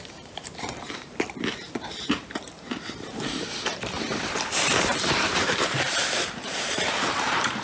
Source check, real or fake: fake